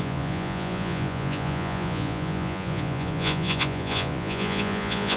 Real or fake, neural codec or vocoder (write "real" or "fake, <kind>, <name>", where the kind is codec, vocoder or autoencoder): fake, vocoder, Vocos